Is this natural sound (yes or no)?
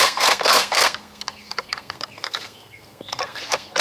no